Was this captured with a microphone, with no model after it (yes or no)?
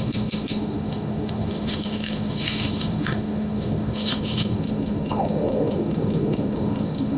no